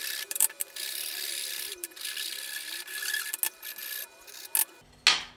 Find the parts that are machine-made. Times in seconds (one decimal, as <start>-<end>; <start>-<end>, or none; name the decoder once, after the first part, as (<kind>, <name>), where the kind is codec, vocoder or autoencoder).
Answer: 0.0-3.2 (vocoder, BigVGAN v2)